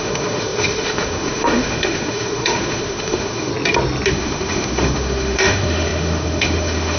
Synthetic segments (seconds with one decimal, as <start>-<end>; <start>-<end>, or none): 0.0-3.5; 4.1-7.0